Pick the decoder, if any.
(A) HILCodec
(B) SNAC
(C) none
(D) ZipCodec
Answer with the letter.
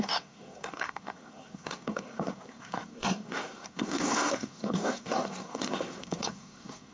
B